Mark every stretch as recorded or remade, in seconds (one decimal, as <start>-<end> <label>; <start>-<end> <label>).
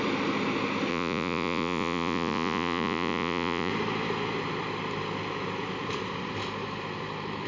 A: 0.0-0.9 recorded; 0.9-3.7 remade; 3.7-7.5 recorded